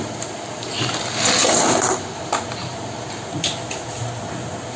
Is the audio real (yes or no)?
yes